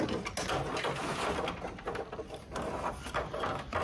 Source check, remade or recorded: recorded